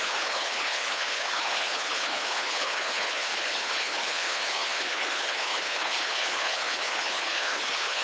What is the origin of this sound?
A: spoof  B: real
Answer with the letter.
A